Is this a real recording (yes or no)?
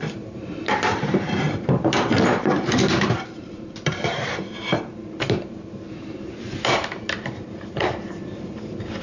no